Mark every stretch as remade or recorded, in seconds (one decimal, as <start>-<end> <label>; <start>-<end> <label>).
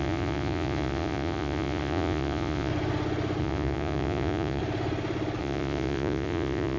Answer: 0.0-2.7 remade; 2.7-3.4 recorded; 3.4-4.6 remade; 4.6-5.4 recorded; 5.4-6.8 remade